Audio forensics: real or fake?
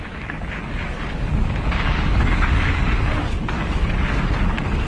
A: fake